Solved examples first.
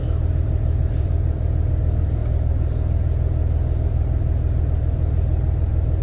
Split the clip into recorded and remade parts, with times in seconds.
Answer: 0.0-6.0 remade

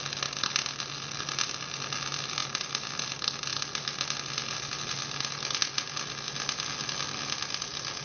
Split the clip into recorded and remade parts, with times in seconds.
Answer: 0.0-8.0 recorded

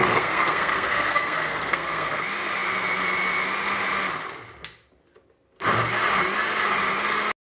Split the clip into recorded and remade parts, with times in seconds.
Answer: 0.0-2.2 remade; 2.2-7.5 recorded

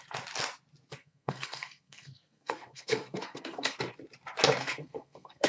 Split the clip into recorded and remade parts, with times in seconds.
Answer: 0.0-1.0 recorded; 1.0-3.8 remade; 3.8-4.6 recorded; 4.6-5.5 remade

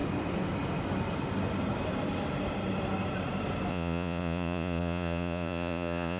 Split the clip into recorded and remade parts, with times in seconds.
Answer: 0.0-3.7 recorded; 3.7-6.2 remade

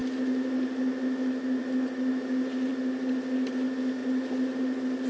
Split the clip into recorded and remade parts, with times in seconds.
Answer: 0.0-5.1 recorded

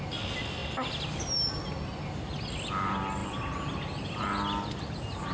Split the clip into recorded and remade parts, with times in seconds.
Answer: 0.0-5.3 recorded

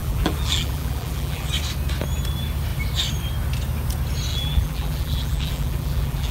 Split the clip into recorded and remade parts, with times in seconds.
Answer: 0.0-1.5 remade; 1.5-4.3 recorded; 4.3-6.3 remade